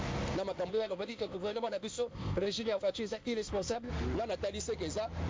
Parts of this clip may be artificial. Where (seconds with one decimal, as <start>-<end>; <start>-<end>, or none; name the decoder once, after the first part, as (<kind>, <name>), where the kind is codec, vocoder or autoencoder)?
0.7-3.9 (codec, ZipCodec)